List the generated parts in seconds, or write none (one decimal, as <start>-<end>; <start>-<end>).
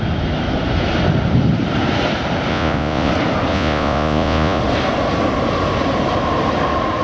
2.5-3.1; 3.5-4.6